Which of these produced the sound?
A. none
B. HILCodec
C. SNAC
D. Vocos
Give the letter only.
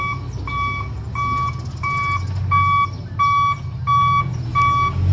A